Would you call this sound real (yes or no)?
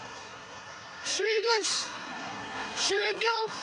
no